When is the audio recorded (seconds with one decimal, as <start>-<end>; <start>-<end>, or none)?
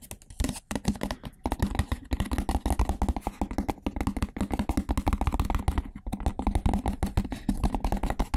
0.0-8.4